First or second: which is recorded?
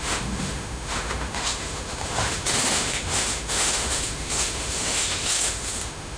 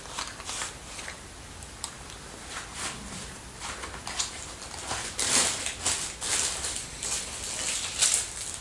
second